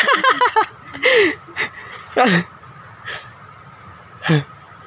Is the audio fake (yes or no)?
no